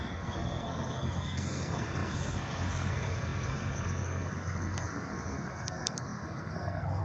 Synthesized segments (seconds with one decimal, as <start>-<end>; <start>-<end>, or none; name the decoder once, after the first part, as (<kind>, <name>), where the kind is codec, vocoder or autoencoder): 0.0-7.0 (codec, SNAC)